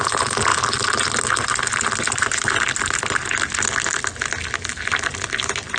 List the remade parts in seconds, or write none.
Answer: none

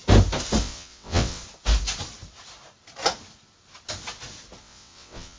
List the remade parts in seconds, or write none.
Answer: 0.6-1.4 (vocoder, WaveNeXt); 4.6-5.4

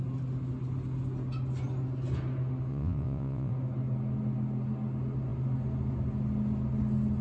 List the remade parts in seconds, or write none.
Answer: 2.7-3.5 (vocoder, WaveNeXt)

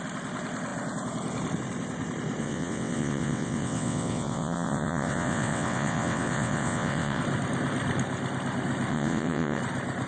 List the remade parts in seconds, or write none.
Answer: 2.4-7.2 (vocoder, WaveNeXt); 8.9-9.6

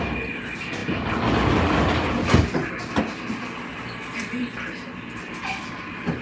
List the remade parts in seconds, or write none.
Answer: none

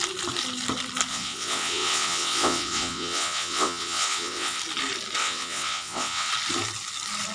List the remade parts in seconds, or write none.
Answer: 1.1-4.6 (vocoder, WaveNeXt); 5.2-6.3

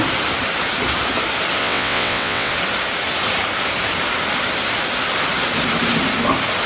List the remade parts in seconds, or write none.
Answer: 1.6-2.5 (vocoder, WaveNeXt)